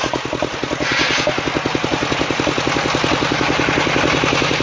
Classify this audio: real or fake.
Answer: real